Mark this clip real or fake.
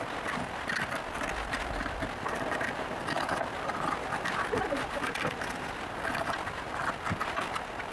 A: fake